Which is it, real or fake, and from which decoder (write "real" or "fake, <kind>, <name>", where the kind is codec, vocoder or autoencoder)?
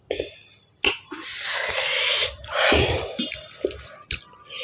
real